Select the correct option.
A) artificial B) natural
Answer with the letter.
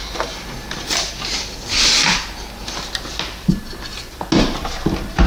B